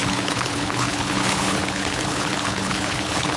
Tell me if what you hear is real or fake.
fake